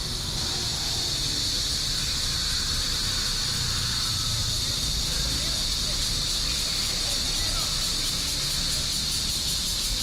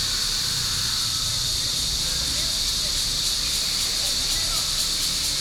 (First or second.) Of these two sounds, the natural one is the first